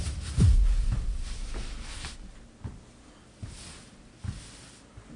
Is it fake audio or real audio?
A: real